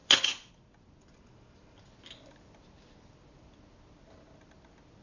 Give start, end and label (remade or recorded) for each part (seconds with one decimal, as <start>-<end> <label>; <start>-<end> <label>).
0.0-0.5 remade; 0.5-5.0 recorded

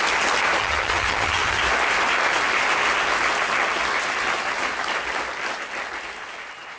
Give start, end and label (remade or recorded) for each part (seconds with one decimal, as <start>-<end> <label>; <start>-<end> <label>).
0.0-0.6 recorded; 0.6-1.6 remade; 1.6-6.8 recorded

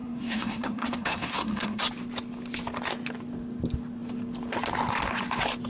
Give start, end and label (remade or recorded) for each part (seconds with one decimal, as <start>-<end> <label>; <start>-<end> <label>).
0.0-1.8 remade; 1.8-5.7 recorded

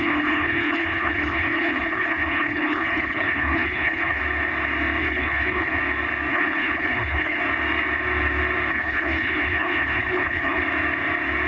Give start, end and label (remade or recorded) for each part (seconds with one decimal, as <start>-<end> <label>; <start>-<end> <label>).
0.0-4.2 remade; 4.2-5.0 recorded; 5.0-5.8 remade; 5.8-6.3 recorded; 6.3-7.4 remade; 7.4-8.7 recorded; 8.7-10.6 remade; 10.6-11.5 recorded

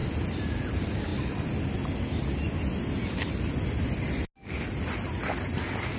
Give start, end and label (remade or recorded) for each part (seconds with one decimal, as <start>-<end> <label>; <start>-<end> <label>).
0.0-6.0 recorded